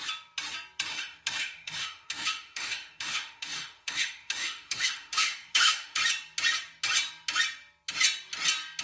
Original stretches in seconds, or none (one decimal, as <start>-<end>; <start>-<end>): 0.0-0.9; 6.0-8.8